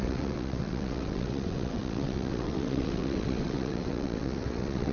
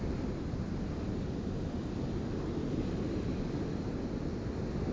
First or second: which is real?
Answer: second